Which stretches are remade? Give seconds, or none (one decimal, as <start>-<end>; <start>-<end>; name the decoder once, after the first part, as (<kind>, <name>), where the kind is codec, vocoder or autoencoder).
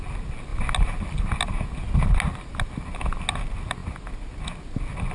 none